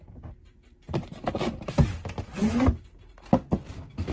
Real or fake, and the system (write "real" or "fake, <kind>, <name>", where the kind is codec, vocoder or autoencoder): real